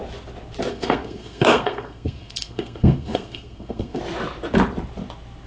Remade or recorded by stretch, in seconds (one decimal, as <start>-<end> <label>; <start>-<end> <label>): 0.0-0.7 recorded; 0.7-4.0 remade; 4.0-5.5 recorded